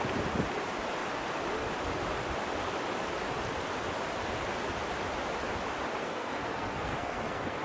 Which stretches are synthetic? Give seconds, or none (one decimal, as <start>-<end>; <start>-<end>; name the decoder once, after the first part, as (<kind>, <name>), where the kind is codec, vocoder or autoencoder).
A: 6.0-7.6 (codec, SNAC)